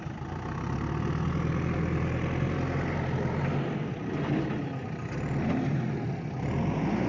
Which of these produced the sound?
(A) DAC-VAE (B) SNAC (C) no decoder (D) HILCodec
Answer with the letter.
C